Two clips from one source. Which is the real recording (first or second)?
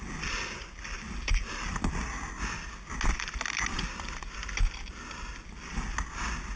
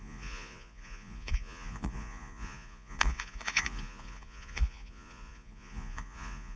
first